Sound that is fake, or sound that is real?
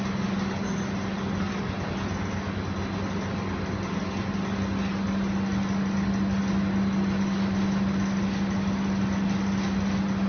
real